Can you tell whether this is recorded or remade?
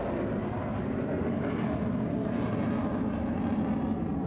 recorded